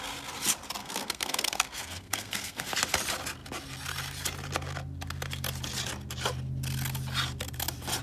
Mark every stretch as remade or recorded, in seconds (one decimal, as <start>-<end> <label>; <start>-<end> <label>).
0.0-0.8 recorded; 0.8-2.7 remade; 2.7-8.0 recorded